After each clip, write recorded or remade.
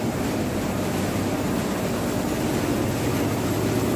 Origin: recorded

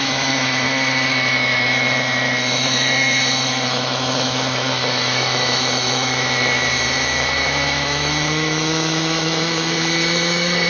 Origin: remade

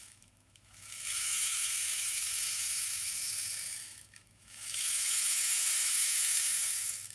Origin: remade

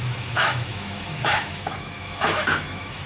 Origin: remade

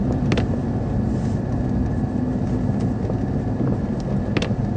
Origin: recorded